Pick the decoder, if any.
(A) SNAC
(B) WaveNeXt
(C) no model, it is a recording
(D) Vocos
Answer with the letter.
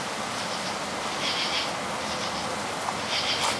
C